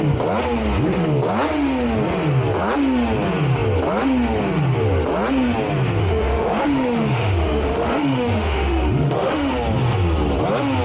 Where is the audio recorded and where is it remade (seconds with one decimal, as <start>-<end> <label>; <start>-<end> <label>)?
0.0-6.0 recorded; 6.0-9.5 remade; 9.5-10.8 recorded